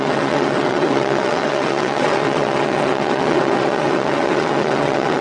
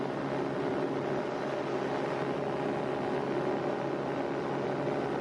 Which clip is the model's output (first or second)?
first